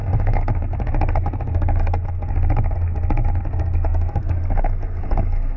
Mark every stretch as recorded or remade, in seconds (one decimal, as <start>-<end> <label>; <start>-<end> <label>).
0.0-5.6 remade